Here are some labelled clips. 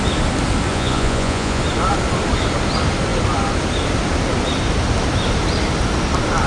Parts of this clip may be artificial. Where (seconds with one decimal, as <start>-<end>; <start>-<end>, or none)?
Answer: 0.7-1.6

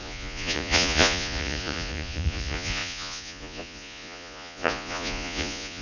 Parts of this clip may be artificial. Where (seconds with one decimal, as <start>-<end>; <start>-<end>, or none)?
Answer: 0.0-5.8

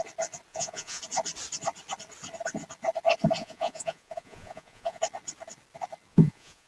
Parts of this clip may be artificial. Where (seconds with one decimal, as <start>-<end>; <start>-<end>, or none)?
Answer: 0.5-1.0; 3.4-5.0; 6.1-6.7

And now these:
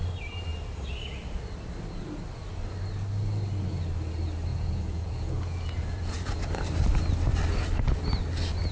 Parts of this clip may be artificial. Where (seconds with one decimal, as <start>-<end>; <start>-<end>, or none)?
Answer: 4.5-6.3

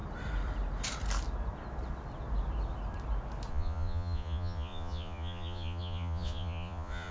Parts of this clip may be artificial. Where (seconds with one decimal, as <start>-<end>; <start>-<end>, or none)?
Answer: 3.5-7.1

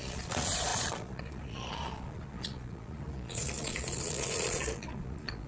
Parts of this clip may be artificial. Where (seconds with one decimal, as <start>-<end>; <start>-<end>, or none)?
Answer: 0.0-5.5

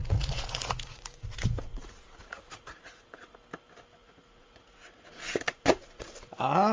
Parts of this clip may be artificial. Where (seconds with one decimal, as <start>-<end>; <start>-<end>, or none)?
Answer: 0.0-3.3; 4.0-6.3